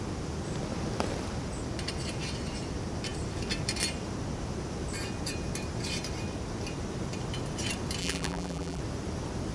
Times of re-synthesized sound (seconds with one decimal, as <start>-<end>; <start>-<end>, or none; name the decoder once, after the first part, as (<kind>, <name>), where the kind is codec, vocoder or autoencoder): 8.0-8.8 (vocoder, BigVGAN v2)